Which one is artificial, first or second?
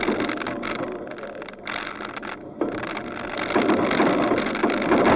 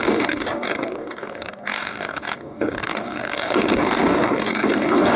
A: second